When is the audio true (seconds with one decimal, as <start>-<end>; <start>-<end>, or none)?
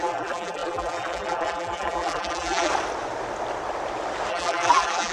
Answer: 2.7-4.3